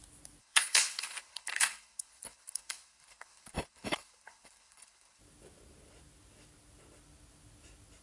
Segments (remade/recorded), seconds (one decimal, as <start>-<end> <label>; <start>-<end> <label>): 0.0-0.4 recorded; 0.4-5.2 remade; 5.2-8.0 recorded

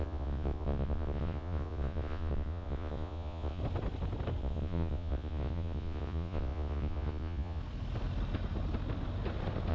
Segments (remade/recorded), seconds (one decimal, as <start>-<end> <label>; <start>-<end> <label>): 0.0-3.6 remade; 3.6-4.4 recorded; 4.4-7.6 remade; 7.6-9.7 recorded

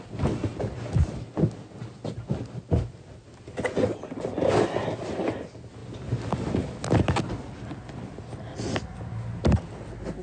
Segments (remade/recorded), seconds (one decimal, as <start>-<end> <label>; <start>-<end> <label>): 0.0-10.2 recorded

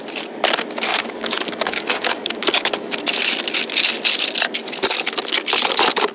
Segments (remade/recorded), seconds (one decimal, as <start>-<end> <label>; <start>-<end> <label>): 0.0-0.9 recorded; 0.9-3.1 remade; 3.1-6.1 recorded

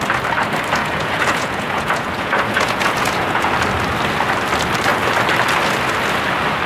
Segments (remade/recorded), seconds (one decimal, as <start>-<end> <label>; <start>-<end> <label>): 0.0-0.8 recorded; 0.8-3.5 remade; 3.5-6.7 recorded